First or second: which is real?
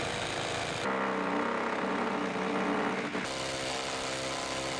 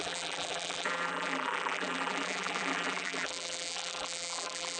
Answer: first